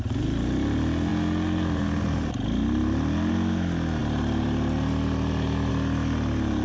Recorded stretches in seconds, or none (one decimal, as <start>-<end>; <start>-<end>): 0.0-6.6